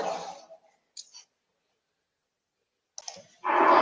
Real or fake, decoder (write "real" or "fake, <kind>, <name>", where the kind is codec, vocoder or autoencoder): real